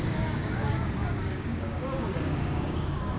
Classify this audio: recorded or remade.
remade